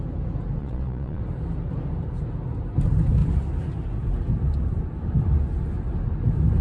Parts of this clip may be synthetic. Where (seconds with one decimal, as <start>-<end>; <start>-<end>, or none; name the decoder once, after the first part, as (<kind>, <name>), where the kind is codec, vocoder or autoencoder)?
0.6-1.2 (vocoder, Vocos)